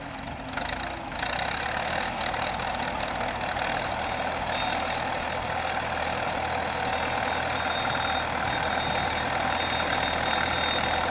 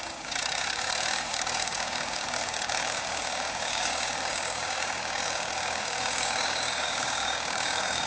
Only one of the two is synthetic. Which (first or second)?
second